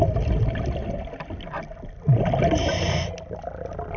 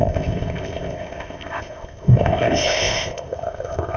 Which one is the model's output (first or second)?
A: second